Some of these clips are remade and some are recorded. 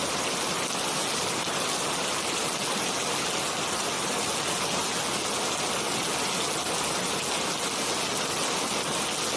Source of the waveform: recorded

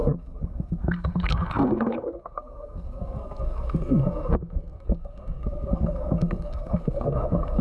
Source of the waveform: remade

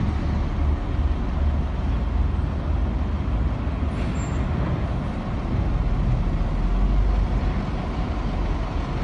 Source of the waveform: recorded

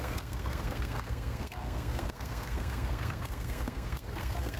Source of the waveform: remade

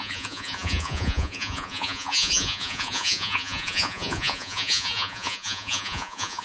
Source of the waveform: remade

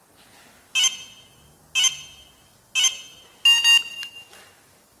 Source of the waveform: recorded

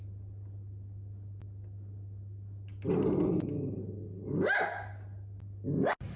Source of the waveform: recorded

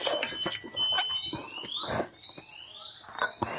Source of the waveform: recorded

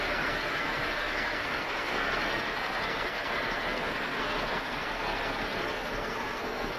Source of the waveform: remade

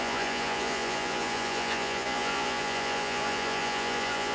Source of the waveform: remade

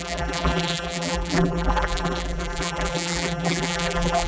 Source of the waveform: remade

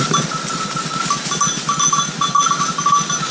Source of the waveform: recorded